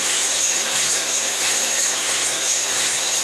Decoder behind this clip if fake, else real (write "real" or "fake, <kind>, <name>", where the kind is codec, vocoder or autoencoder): fake, codec, SNAC